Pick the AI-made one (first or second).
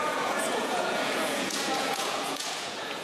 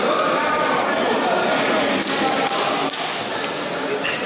first